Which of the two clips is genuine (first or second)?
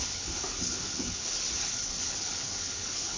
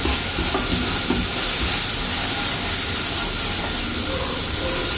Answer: second